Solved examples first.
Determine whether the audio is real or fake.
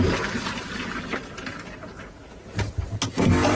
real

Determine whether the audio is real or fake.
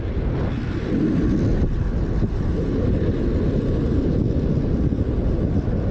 real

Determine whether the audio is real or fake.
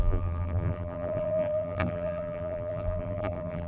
fake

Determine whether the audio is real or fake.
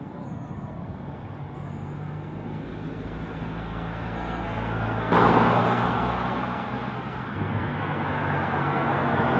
fake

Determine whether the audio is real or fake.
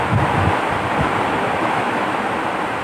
fake